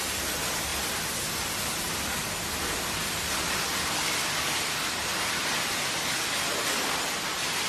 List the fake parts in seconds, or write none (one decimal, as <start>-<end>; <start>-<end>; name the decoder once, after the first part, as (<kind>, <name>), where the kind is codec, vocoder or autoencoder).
none